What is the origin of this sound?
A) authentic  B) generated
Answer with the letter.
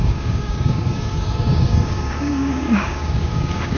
B